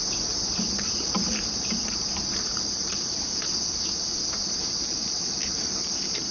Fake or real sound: fake